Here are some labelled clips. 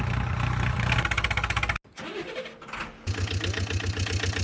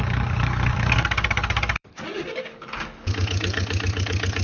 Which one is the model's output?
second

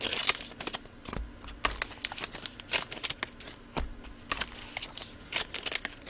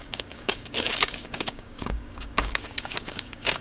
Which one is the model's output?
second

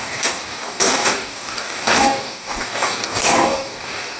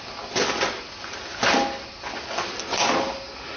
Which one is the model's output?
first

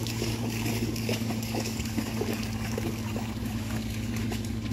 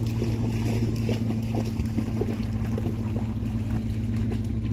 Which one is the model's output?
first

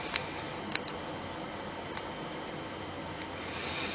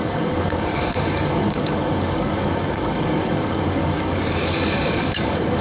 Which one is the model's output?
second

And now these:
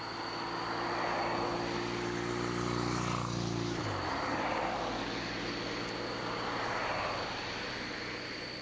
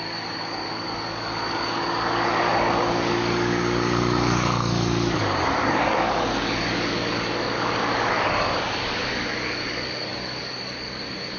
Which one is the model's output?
second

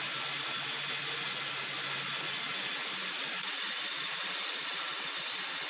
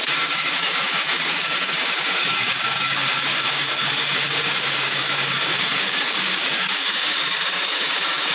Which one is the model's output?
second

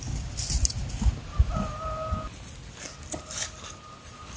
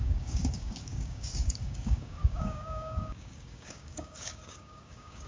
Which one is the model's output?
second